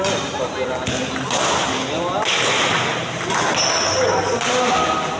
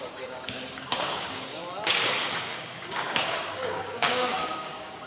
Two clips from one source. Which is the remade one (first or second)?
second